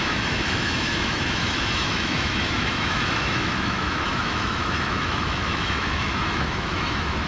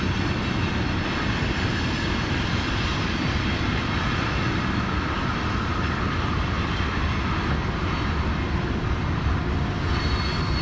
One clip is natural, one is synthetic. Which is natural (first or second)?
second